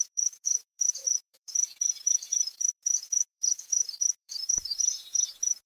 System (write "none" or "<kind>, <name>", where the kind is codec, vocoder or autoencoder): vocoder, Vocos